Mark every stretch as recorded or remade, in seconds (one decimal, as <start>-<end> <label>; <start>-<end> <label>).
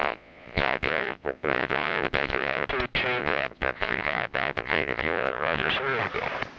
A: 0.0-2.7 remade; 2.7-3.2 recorded; 3.2-5.7 remade; 5.7-6.6 recorded